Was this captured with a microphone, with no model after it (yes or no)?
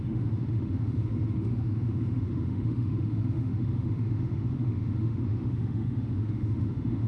no